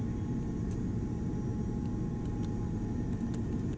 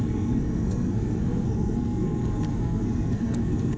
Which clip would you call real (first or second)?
first